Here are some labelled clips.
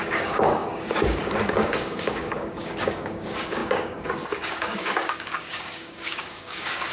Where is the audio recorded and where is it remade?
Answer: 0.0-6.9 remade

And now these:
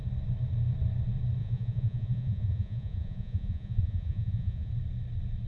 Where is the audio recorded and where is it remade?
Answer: 0.0-1.4 recorded; 1.4-4.7 remade; 4.7-5.5 recorded

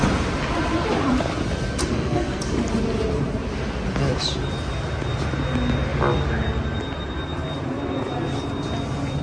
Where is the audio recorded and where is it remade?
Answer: 0.0-1.8 recorded; 1.8-2.4 remade; 2.4-9.2 recorded

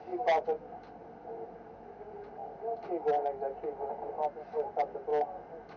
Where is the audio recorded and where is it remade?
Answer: 0.0-5.8 recorded

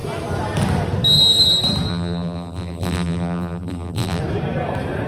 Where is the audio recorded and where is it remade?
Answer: 0.0-1.9 recorded; 1.9-4.2 remade; 4.2-5.1 recorded